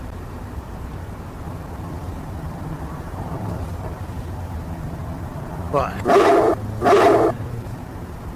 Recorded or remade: remade